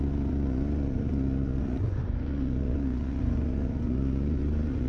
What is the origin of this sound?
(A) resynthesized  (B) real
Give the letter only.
A